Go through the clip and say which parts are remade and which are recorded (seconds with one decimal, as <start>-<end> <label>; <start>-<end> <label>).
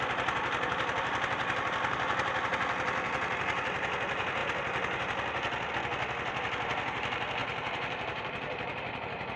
0.0-7.4 recorded; 7.4-9.4 remade